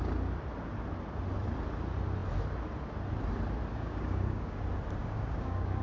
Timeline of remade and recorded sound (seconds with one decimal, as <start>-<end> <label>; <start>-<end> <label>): 0.0-3.7 recorded; 3.7-4.6 remade; 4.6-5.0 recorded; 5.0-5.8 remade